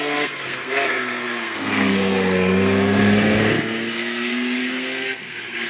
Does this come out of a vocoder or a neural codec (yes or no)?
yes